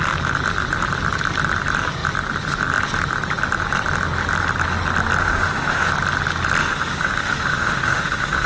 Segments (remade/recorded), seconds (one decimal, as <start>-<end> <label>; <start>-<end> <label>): 0.0-5.2 recorded; 5.2-5.9 remade; 5.9-6.6 recorded; 6.6-8.5 remade